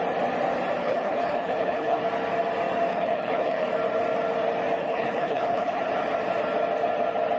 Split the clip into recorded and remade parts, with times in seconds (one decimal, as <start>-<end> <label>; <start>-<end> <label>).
0.0-0.8 recorded; 0.8-2.0 remade; 2.0-2.9 recorded; 2.9-3.7 remade; 3.7-4.8 recorded; 4.8-5.8 remade; 5.8-7.4 recorded